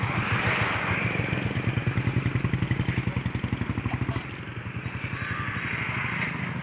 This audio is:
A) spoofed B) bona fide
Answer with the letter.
B